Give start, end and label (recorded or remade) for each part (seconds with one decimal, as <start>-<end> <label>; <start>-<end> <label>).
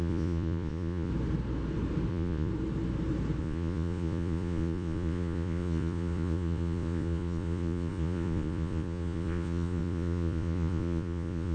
0.0-1.1 remade; 1.1-2.1 recorded; 2.1-2.5 remade; 2.5-3.4 recorded; 3.4-11.5 remade